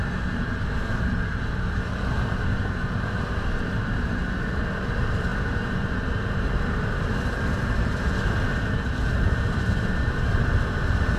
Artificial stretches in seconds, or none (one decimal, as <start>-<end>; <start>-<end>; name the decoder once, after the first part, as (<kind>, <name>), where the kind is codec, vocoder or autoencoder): 0.0-11.2 (vocoder, BigVGAN v2)